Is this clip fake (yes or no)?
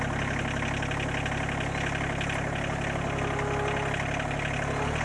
no